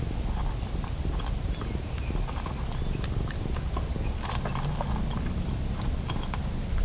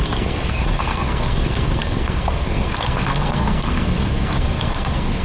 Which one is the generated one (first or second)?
second